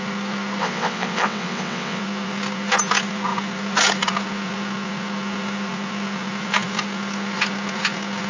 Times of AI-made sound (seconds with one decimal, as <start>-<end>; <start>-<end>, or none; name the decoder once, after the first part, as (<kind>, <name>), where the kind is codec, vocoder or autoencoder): 0.6-2.0 (vocoder, WaveNeXt)